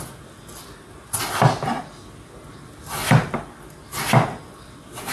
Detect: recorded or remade recorded